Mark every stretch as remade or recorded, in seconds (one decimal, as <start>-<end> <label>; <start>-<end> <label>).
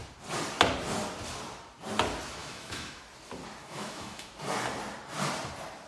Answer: 0.0-2.4 recorded; 2.4-3.0 remade; 3.0-3.6 recorded; 3.6-4.3 remade; 4.3-5.9 recorded